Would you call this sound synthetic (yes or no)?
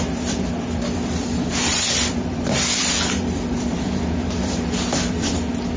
yes